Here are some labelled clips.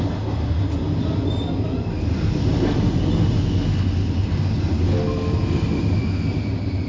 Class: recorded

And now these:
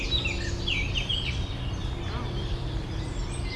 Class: recorded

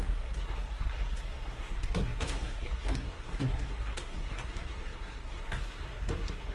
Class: remade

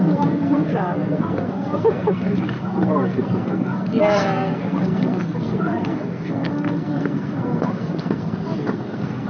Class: remade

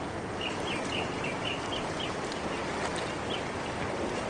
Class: recorded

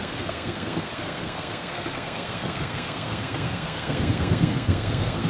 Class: remade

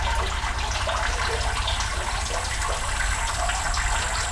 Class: recorded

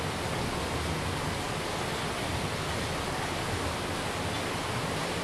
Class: recorded